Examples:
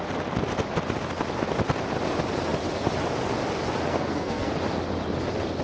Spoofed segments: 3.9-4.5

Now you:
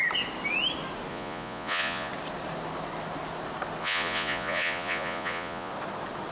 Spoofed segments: 1.1-2.1; 3.8-5.7

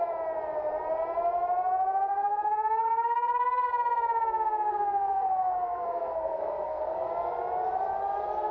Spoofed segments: 2.1-3.7; 4.7-7.1

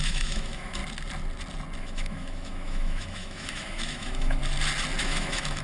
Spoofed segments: 0.0-0.8; 1.8-4.4; 5.0-5.6

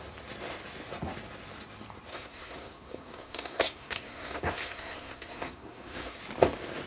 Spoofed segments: 2.1-6.2